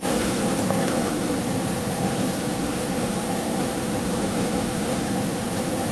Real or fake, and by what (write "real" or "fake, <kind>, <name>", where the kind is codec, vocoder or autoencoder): fake, codec, SNAC